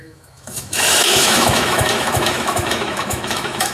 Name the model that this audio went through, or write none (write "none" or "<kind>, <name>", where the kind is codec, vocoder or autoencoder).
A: autoencoder, DAC-VAE